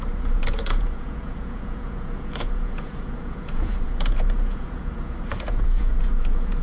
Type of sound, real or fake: fake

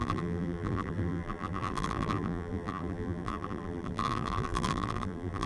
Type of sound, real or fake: fake